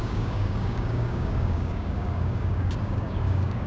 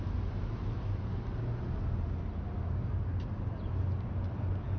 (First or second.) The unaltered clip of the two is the second